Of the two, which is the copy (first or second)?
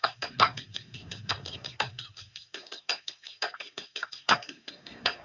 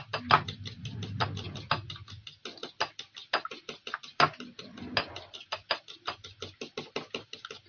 first